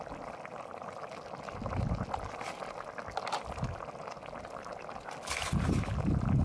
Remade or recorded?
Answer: recorded